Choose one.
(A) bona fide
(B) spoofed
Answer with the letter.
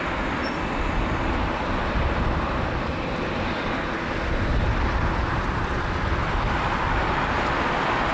A